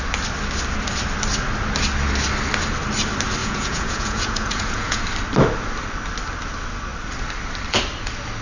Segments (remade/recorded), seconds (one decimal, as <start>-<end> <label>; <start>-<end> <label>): 0.0-3.4 recorded; 3.4-5.0 remade; 5.0-8.4 recorded